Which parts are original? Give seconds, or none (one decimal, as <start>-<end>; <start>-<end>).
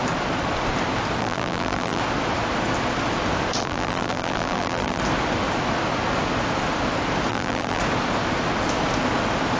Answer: 0.0-1.2; 2.0-3.6; 5.0-7.3; 7.8-9.6